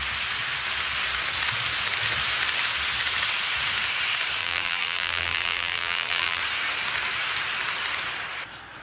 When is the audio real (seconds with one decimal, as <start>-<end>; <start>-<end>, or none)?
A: 0.0-4.4; 6.4-8.8